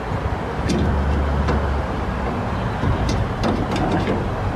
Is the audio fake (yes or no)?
no